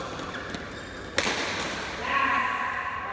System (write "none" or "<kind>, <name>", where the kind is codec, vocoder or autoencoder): none